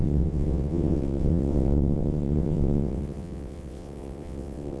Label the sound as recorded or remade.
remade